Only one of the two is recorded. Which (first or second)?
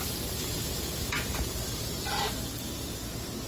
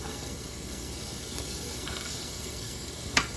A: first